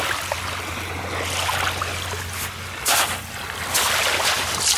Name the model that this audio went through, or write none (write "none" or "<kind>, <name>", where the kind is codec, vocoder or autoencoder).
none